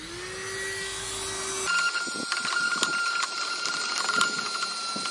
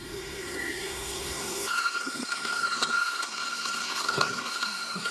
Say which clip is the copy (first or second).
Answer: second